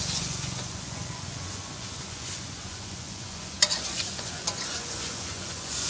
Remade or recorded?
remade